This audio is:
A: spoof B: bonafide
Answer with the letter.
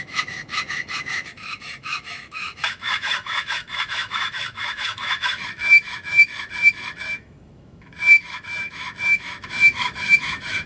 A